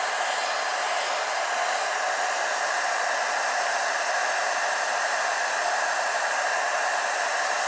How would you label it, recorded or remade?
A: recorded